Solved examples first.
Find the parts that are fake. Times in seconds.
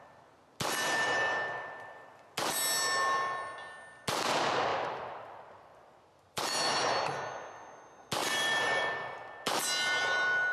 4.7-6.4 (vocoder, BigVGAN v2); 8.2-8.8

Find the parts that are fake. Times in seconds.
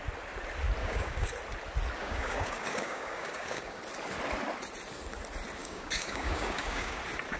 0.8-1.3 (codec, DAC); 2.0-3.8; 5.6-7.0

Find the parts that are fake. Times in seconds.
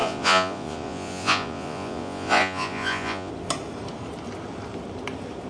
0.0-3.3 (vocoder, Vocos)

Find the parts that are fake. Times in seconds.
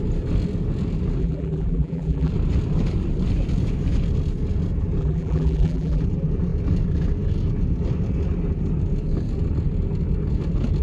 1.2-2.3 (vocoder, BigVGAN v2); 5.0-6.0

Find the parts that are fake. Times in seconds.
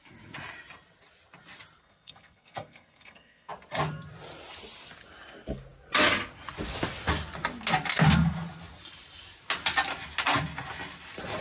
1.8-3.5 (codec, SNAC)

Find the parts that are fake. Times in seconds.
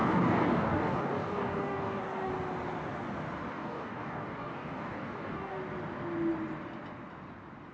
0.0-2.3 (codec, DAC); 3.5-5.6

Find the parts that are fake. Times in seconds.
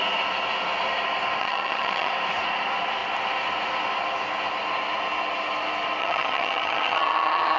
1.4-2.1 (vocoder, HiFi-GAN); 6.0-7.6